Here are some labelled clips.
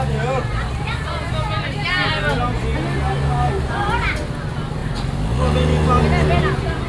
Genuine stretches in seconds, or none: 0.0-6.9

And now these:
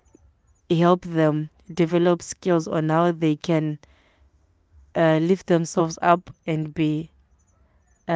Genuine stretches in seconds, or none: 0.0-0.6; 1.5-1.9; 5.8-8.2